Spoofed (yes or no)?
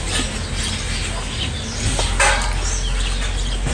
no